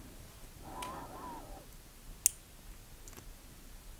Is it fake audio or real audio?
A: real